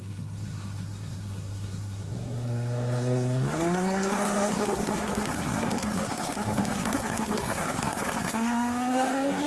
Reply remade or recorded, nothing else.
remade